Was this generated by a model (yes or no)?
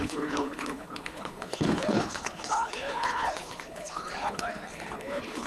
yes